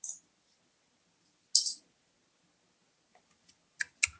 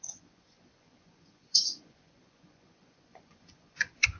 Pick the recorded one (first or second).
first